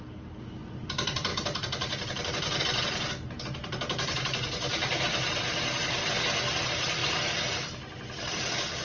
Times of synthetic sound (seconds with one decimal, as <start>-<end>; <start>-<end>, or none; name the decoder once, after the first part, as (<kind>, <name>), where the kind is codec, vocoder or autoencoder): 1.3-2.6 (vocoder, BigVGAN v2); 3.6-5.4; 7.0-7.5